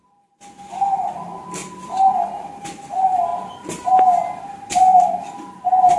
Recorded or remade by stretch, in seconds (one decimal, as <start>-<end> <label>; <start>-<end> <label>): 0.0-3.3 recorded; 3.3-4.7 remade; 4.7-6.0 recorded